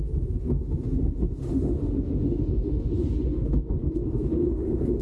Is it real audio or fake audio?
fake